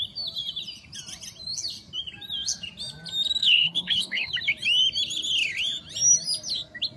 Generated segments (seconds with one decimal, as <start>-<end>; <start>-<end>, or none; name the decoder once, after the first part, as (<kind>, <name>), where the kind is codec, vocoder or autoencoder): 3.4-4.3 (codec, HILCodec)

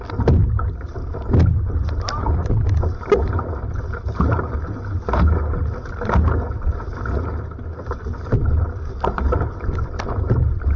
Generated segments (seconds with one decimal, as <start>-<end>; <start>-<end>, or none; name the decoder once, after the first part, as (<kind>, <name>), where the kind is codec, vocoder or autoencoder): none